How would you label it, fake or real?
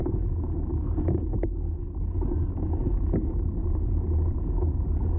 real